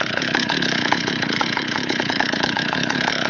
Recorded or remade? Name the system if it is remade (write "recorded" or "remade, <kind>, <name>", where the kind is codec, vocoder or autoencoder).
remade, codec, HILCodec